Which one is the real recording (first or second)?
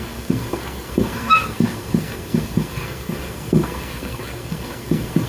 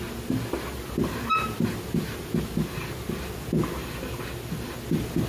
second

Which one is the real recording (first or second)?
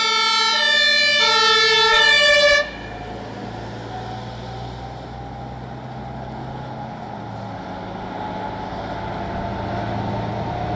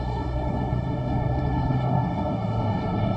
first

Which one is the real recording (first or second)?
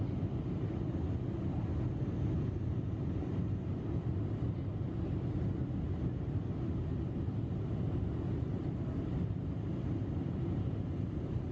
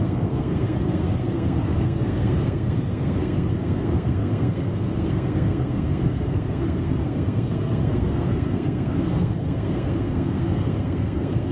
first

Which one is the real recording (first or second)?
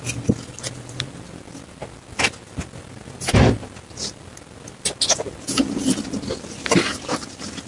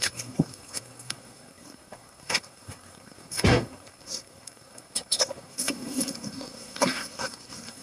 first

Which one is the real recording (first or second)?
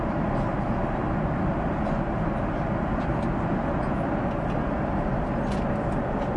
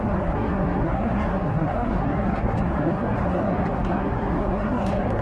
first